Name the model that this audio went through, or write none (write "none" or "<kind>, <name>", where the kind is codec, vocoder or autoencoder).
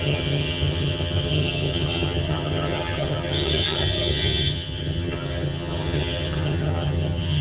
vocoder, HiFi-GAN